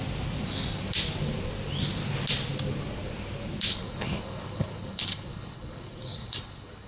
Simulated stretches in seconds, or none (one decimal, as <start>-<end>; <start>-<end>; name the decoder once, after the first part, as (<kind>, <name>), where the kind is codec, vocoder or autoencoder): 3.7-6.9 (codec, HILCodec)